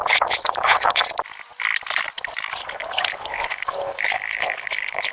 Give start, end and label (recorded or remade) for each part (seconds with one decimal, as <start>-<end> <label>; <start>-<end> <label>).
0.0-1.0 remade; 1.0-2.6 recorded; 2.6-5.1 remade